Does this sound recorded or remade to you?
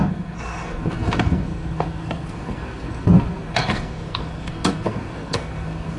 remade